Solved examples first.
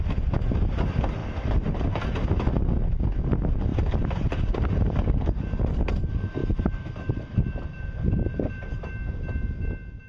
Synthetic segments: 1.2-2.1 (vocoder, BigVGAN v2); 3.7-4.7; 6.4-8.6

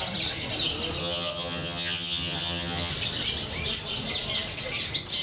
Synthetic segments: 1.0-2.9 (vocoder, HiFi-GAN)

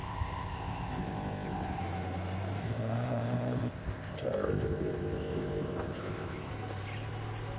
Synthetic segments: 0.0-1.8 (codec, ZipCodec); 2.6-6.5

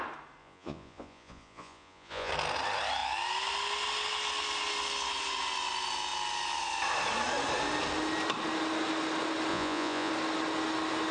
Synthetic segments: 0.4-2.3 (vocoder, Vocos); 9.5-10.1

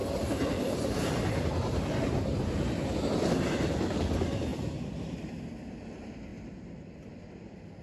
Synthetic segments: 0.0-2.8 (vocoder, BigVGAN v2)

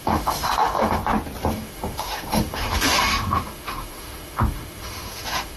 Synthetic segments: 0.0-1.0 (autoencoder, DAC-VAE); 1.5-5.6